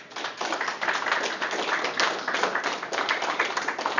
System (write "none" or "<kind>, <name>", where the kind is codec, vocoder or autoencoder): none